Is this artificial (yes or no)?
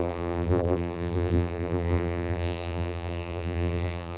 yes